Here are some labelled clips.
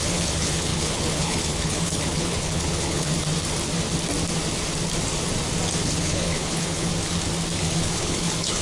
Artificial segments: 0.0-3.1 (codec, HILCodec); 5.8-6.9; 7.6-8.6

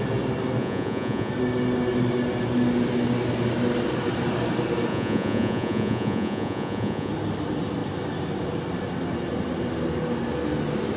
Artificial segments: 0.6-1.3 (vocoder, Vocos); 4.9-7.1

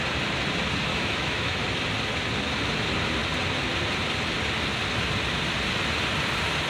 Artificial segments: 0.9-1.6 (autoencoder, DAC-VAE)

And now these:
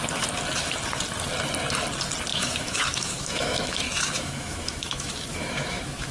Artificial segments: 2.3-6.1 (autoencoder, DAC-VAE)

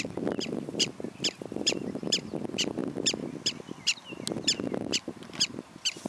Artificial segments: none